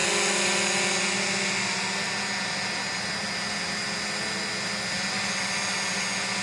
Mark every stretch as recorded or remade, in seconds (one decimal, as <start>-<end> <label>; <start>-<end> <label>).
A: 0.0-6.4 recorded